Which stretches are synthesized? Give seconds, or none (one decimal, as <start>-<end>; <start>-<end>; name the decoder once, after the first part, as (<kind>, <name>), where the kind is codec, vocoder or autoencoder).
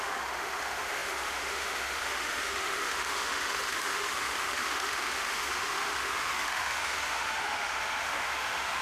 0.0-8.8 (autoencoder, DAC-VAE)